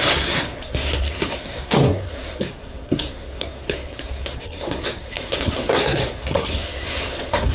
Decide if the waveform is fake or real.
fake